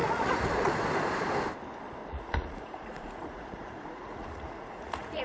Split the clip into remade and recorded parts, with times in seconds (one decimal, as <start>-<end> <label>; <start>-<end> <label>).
0.0-0.7 remade; 0.7-2.0 recorded; 2.0-5.2 remade